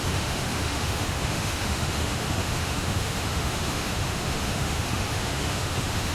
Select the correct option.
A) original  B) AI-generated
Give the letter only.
B